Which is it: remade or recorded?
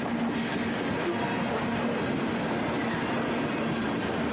recorded